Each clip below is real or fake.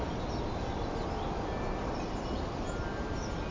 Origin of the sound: real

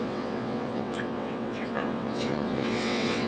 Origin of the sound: fake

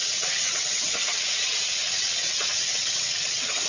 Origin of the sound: fake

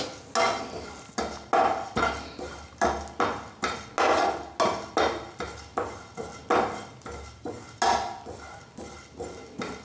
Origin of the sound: real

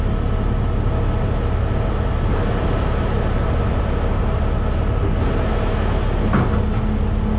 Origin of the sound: real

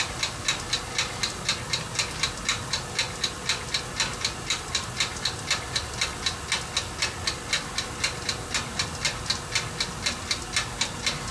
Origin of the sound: real